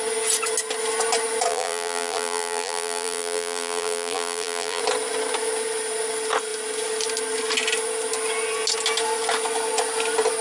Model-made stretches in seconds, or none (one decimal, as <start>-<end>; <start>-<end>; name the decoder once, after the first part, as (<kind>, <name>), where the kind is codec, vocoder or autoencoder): 1.5-4.8 (vocoder, BigVGAN v2)